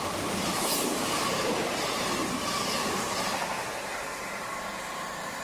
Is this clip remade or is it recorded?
remade